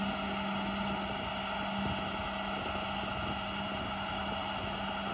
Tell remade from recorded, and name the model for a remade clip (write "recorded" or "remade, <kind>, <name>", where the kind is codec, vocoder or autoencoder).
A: recorded